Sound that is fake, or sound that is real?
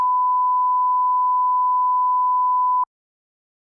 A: real